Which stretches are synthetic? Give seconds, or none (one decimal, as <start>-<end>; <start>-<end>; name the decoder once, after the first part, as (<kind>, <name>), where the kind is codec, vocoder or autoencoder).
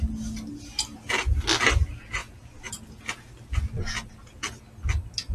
none